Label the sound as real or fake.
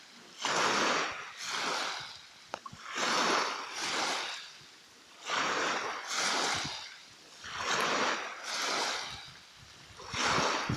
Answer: real